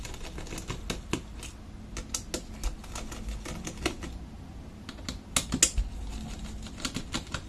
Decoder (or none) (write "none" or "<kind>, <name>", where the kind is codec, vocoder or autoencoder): none